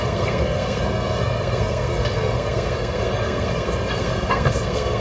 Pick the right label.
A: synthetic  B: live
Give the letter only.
A